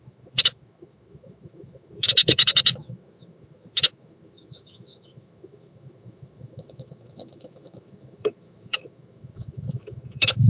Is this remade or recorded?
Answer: remade